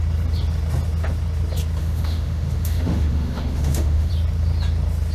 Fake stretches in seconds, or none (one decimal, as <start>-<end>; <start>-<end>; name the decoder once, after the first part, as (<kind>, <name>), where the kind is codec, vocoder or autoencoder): 1.8-4.1 (autoencoder, DAC-VAE)